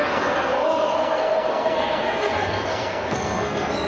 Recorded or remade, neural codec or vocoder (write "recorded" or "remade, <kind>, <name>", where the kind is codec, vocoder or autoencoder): remade, codec, SNAC